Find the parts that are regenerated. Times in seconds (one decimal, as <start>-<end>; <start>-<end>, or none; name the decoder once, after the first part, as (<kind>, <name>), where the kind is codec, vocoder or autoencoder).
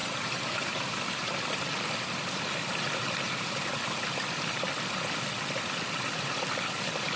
0.0-0.8 (vocoder, BigVGAN v2)